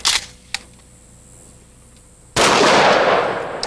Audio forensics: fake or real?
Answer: real